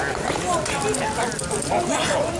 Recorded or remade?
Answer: recorded